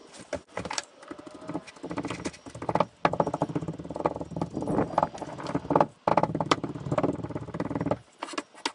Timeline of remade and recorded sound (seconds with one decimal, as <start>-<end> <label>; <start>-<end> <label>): 0.0-1.7 remade; 1.7-3.4 recorded; 3.4-4.0 remade; 4.0-6.1 recorded; 6.1-8.2 remade; 8.2-8.7 recorded